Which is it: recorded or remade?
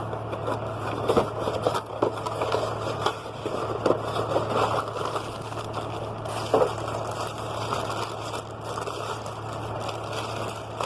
recorded